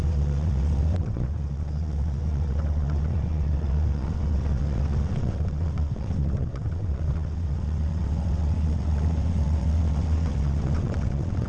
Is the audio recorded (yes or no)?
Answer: no